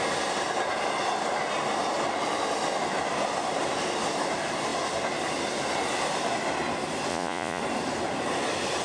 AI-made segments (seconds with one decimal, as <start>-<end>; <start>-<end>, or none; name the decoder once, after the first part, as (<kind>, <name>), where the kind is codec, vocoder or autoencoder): 7.1-7.6 (vocoder, Vocos)